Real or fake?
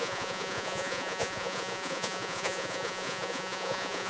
fake